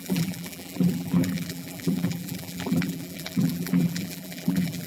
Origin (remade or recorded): remade